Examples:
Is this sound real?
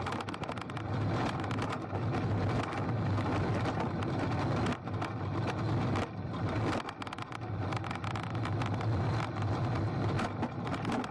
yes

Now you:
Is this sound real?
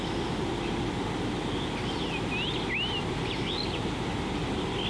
yes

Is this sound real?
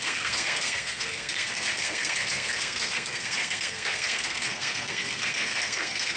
no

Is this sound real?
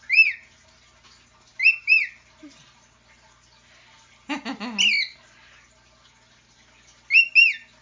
yes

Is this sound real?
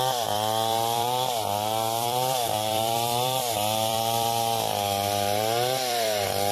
no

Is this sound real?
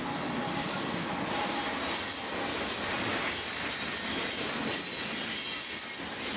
yes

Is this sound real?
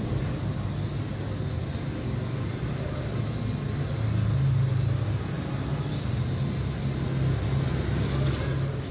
yes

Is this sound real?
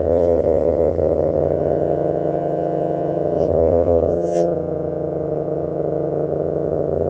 no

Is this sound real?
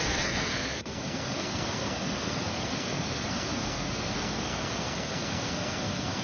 no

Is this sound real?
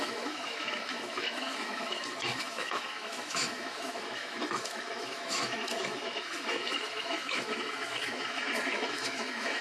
no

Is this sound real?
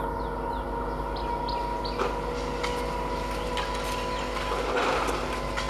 yes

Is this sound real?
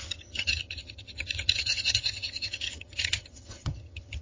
no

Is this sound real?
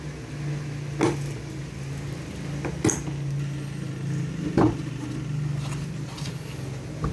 yes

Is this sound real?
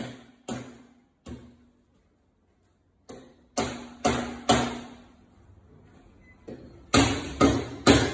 yes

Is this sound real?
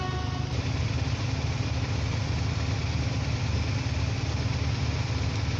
yes